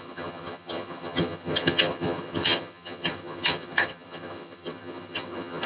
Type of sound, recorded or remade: remade